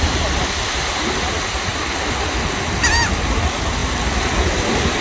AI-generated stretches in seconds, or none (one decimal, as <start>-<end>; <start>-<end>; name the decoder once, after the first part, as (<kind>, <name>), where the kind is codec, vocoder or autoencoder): none